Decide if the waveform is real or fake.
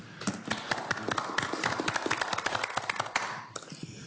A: real